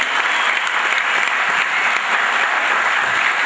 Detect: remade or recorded recorded